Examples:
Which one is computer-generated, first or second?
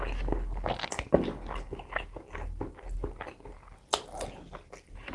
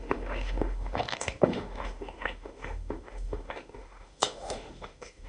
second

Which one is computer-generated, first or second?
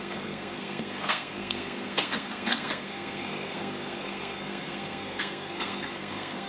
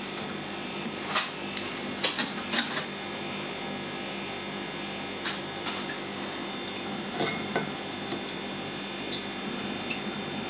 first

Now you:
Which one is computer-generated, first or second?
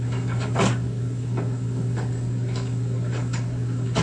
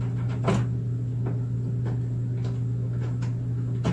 first